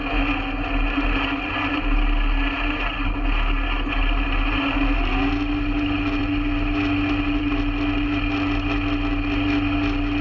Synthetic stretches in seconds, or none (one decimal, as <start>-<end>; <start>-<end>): none